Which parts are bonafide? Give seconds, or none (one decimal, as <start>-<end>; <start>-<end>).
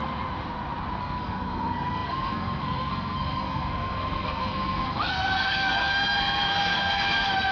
0.0-1.0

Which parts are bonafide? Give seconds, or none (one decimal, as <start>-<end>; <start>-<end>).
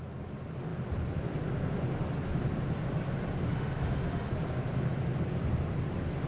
0.0-3.5; 4.3-6.3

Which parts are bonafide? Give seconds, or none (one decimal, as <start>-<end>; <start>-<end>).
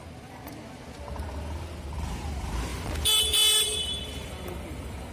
0.5-2.7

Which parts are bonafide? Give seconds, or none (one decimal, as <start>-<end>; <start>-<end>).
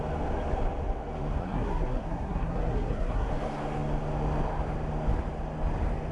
0.0-1.4; 3.3-6.1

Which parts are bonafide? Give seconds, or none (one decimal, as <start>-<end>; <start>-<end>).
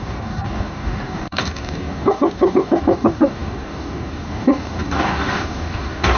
none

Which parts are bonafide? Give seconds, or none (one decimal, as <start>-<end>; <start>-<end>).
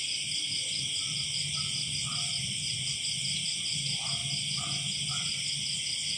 4.2-5.0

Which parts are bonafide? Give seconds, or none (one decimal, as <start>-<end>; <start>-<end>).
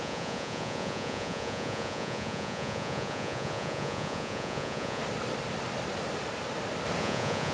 5.0-7.0